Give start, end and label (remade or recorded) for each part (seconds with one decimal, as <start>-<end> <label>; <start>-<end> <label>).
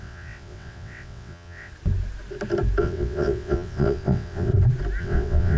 0.0-1.7 remade; 1.7-2.8 recorded; 2.8-4.5 remade; 4.5-5.0 recorded; 5.0-5.6 remade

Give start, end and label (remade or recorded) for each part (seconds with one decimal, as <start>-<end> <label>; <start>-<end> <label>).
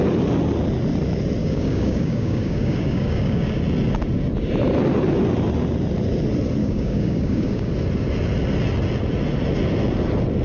0.0-1.4 recorded; 1.4-3.6 remade; 3.6-6.6 recorded; 6.6-7.7 remade; 7.7-10.4 recorded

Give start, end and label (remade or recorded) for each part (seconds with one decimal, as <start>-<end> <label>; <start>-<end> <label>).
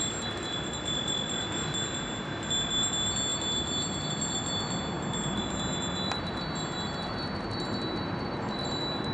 0.0-9.1 recorded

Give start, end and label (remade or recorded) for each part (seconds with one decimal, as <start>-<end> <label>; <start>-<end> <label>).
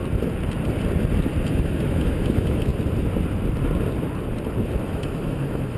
0.0-1.5 recorded; 1.5-2.7 remade; 2.7-4.8 recorded; 4.8-5.8 remade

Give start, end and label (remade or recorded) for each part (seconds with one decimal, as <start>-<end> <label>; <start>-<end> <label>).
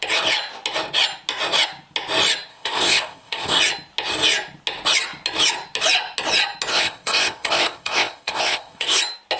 0.0-2.5 recorded; 2.5-3.6 remade; 3.6-6.7 recorded; 6.7-9.0 remade; 9.0-9.4 recorded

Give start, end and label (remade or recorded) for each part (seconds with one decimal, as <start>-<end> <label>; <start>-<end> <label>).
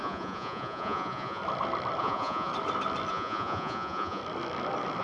0.0-1.4 remade; 1.4-2.0 recorded; 2.0-2.5 remade; 2.5-3.1 recorded; 3.1-4.2 remade; 4.2-5.0 recorded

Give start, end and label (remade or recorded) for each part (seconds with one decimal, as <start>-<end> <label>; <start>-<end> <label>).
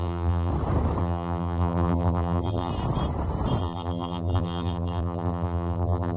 0.0-0.5 remade; 0.5-1.0 recorded; 1.0-2.7 remade; 2.7-3.6 recorded; 3.6-6.2 remade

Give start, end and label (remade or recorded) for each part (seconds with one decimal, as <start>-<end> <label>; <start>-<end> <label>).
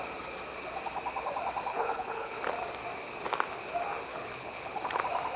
0.0-1.7 recorded; 1.7-2.4 remade; 2.4-4.1 recorded; 4.1-4.8 remade; 4.8-5.4 recorded